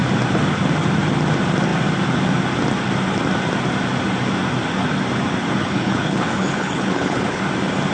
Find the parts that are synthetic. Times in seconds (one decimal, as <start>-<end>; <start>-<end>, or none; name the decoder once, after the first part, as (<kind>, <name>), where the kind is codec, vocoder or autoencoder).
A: 5.6-7.4 (codec, HILCodec)